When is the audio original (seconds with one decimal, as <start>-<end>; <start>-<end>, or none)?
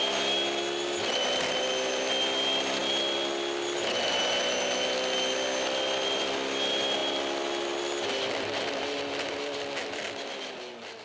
0.0-11.0